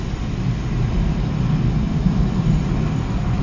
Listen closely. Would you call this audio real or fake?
real